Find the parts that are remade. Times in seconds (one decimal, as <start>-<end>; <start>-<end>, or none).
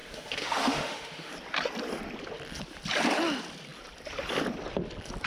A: 0.0-1.3